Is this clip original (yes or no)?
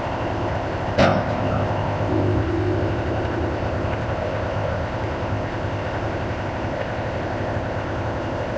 no